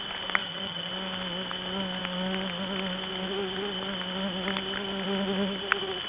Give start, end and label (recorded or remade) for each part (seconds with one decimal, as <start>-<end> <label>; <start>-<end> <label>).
0.0-0.4 recorded; 0.4-0.9 remade; 0.9-6.1 recorded